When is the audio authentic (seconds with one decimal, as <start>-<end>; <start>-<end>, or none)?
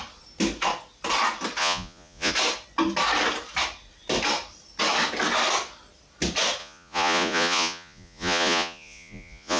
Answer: 0.0-1.6; 2.3-6.6